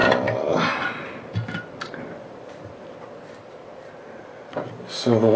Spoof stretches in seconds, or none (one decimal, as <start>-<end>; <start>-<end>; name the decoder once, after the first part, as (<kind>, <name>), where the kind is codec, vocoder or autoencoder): 2.0-2.9 (vocoder, BigVGAN v2); 4.0-5.4